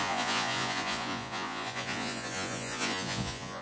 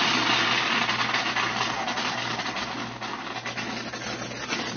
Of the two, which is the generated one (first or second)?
first